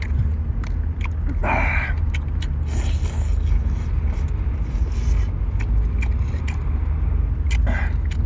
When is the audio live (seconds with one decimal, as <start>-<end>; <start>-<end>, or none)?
0.0-8.3